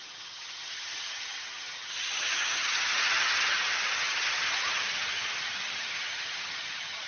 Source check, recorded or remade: remade